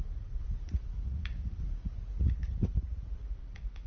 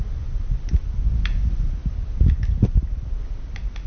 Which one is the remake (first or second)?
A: first